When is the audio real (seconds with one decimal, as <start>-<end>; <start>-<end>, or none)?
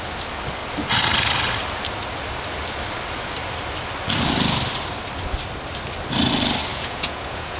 0.0-6.7